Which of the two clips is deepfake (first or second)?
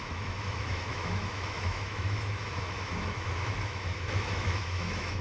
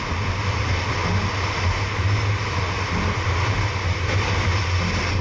first